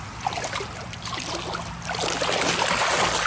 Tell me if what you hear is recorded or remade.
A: recorded